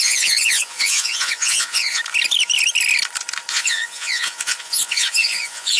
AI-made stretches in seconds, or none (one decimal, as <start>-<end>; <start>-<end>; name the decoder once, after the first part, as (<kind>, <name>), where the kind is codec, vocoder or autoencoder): 0.0-2.0 (vocoder, Vocos); 3.5-5.8